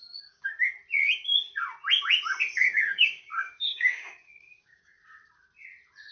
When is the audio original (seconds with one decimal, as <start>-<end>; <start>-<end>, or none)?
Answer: 0.5-2.6; 5.0-6.1

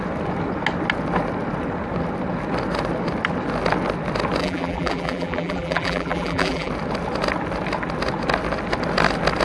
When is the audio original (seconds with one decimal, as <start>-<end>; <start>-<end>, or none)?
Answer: 0.0-4.4; 6.7-9.4